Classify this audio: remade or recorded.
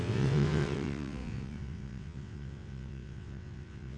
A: remade